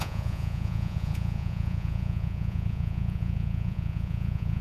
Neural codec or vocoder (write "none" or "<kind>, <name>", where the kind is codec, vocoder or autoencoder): vocoder, Vocos